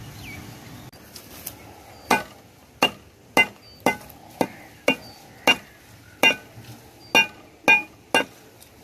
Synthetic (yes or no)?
no